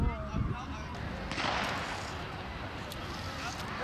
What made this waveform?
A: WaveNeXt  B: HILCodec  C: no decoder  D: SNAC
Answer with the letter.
C